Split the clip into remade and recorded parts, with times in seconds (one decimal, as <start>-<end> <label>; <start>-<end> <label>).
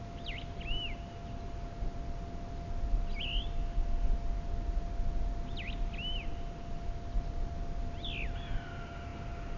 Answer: 0.0-9.6 recorded